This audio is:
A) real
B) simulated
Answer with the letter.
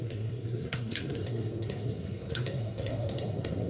B